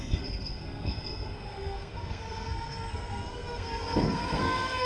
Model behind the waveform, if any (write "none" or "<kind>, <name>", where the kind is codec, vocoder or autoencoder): codec, SNAC